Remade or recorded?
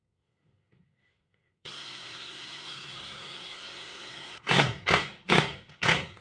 remade